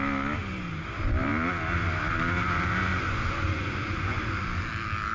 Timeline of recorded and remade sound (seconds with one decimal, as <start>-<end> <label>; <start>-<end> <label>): 0.0-2.9 recorded; 2.9-4.3 remade; 4.3-5.1 recorded